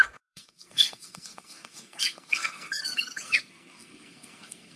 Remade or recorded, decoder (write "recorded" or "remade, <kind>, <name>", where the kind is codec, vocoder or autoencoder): remade, codec, SNAC